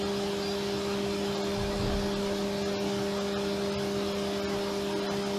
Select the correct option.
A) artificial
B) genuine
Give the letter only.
B